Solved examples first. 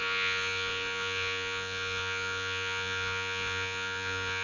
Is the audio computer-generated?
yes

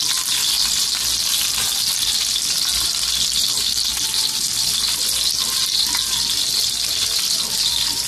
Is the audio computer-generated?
no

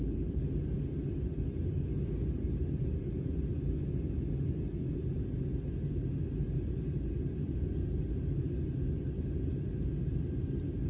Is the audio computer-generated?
no